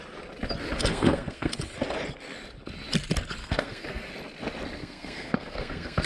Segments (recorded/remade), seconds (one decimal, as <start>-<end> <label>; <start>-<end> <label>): 0.0-0.9 recorded; 0.9-1.5 remade; 1.5-3.4 recorded; 3.4-4.1 remade; 4.1-4.8 recorded; 4.8-6.1 remade